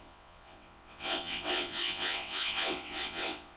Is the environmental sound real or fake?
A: fake